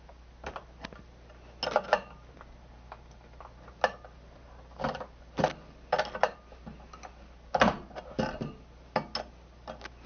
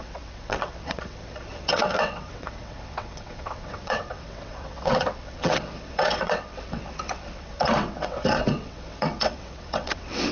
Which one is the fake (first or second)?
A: second